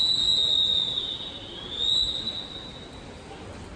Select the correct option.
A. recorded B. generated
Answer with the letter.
A